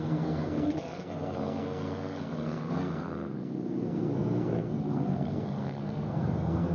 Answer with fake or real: fake